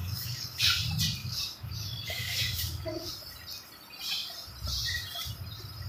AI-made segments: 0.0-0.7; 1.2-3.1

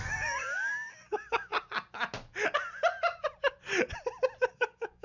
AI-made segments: 0.0-1.5; 4.5-5.0

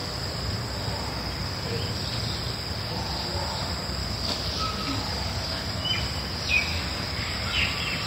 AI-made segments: 4.0-6.0; 6.7-7.5

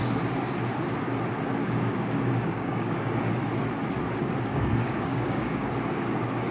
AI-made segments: 1.6-3.3; 4.5-5.7